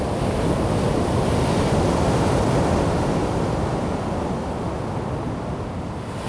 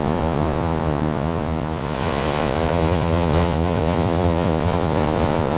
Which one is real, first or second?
first